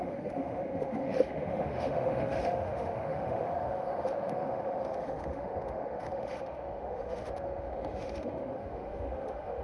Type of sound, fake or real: fake